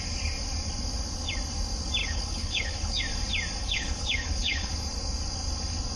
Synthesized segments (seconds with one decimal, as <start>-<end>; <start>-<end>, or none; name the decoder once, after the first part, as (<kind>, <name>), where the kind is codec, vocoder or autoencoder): 2.0-3.0 (codec, HILCodec); 3.6-4.7